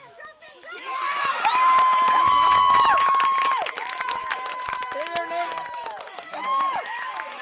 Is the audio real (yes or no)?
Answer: no